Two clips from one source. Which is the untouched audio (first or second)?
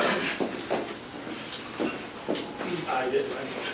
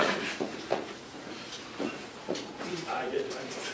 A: first